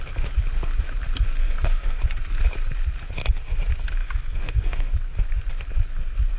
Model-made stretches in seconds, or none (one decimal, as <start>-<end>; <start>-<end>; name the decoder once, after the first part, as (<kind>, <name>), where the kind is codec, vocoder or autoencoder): 1.4-2.0 (codec, SNAC); 4.0-4.9